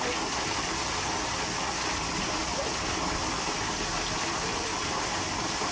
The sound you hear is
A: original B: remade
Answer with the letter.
A